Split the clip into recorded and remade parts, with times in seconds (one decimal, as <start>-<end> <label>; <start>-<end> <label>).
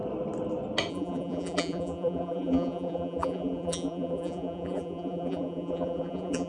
0.0-0.9 recorded; 0.9-6.5 remade